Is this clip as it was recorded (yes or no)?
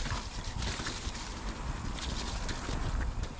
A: yes